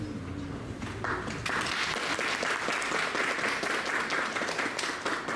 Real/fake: real